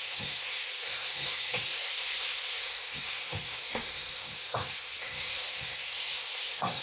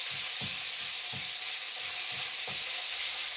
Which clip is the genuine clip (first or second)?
second